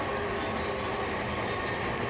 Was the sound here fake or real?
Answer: real